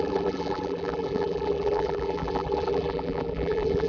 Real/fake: fake